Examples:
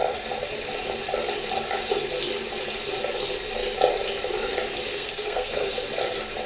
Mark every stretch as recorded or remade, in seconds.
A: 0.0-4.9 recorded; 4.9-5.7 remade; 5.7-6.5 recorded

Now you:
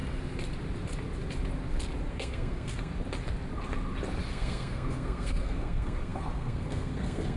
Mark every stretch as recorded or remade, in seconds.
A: 0.0-2.1 recorded; 2.1-2.9 remade; 2.9-4.3 recorded; 4.3-7.4 remade

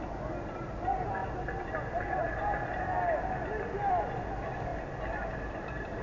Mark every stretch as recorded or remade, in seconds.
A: 0.0-6.0 recorded

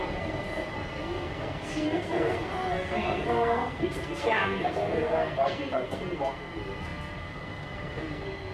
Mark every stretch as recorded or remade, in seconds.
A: 0.0-8.5 remade